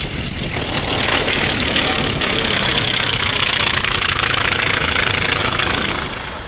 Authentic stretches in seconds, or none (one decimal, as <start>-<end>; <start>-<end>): 0.0-1.1; 5.0-5.4; 5.9-6.5